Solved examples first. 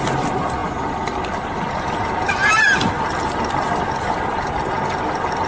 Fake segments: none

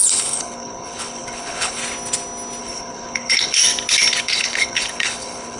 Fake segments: 0.0-1.8 (codec, HILCodec); 2.6-3.6; 4.2-5.6

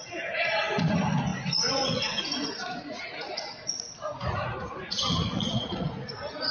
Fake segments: 0.0-6.5 (vocoder, Vocos)